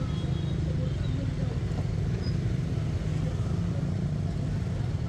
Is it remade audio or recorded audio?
recorded